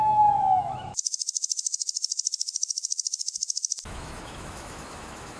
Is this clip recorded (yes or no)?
no